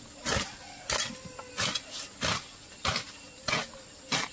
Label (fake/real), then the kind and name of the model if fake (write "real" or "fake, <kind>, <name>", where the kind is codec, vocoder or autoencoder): real